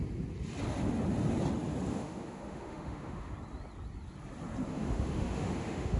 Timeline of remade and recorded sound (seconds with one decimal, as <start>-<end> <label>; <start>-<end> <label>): 0.0-1.9 recorded; 1.9-3.3 remade; 3.3-4.7 recorded; 4.7-6.0 remade